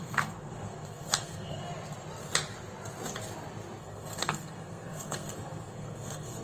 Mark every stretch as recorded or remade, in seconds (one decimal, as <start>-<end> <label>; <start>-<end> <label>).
0.0-1.6 remade; 1.6-3.8 recorded; 3.8-6.4 remade